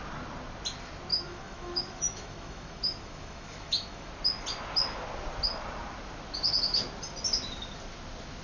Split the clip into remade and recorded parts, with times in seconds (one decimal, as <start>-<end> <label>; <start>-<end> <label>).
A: 0.0-1.1 recorded; 1.1-4.1 remade; 4.1-8.4 recorded